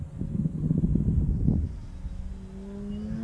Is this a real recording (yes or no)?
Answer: yes